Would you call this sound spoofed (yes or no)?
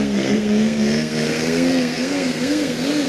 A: yes